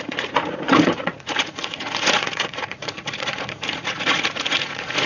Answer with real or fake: fake